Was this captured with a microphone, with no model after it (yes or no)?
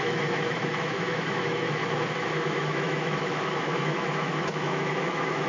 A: no